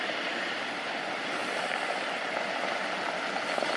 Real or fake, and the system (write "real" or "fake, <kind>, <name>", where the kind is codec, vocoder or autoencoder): real